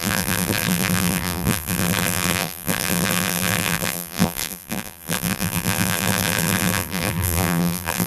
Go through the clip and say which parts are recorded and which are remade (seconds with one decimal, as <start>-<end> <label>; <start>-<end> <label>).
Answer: 0.0-8.1 remade